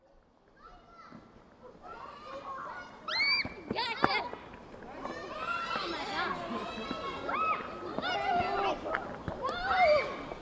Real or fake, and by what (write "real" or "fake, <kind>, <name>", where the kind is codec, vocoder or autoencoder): real